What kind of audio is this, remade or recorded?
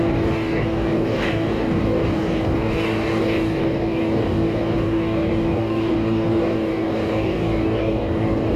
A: remade